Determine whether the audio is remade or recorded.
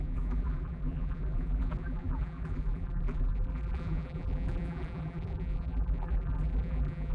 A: remade